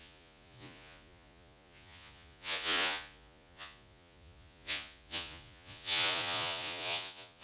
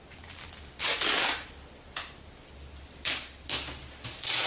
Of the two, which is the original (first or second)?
second